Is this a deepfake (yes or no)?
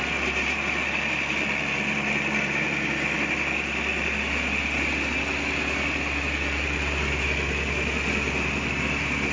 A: no